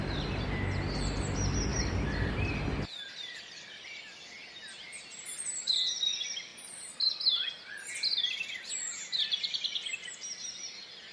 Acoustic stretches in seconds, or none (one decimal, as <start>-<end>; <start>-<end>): 0.0-1.7; 5.4-11.1

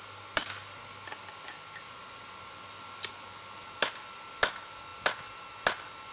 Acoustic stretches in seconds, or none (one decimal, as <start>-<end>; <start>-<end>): 0.0-6.1

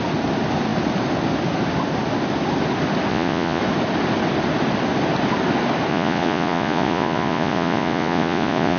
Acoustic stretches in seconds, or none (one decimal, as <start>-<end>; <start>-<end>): 0.0-3.1; 3.6-5.9

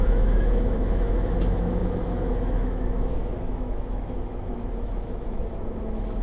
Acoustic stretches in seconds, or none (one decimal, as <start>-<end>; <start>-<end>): none

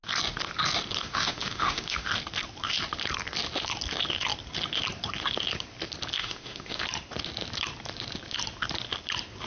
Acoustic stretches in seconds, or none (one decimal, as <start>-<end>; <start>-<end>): 0.0-1.0; 2.1-6.2; 6.8-9.5

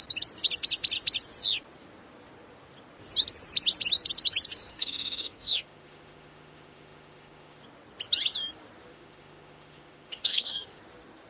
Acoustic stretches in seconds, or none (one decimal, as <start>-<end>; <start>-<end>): 0.0-4.7; 7.6-8.9; 10.8-11.3

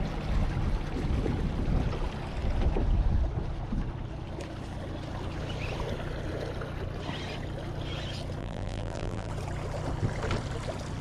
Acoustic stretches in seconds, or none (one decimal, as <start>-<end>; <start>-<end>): 0.0-8.4; 9.3-11.0

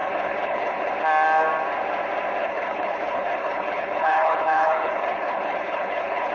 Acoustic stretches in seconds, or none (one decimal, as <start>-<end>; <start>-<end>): 0.9-2.4